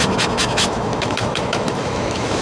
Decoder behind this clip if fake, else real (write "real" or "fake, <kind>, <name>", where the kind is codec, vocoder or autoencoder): fake, autoencoder, DAC-VAE